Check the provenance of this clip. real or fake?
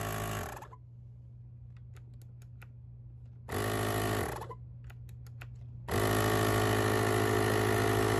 real